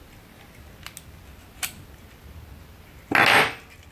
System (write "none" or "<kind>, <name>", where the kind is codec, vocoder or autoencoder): none